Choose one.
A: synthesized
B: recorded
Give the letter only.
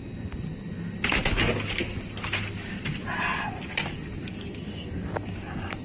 B